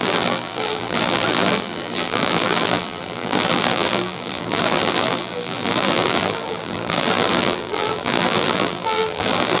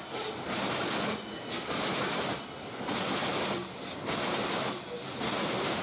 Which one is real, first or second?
second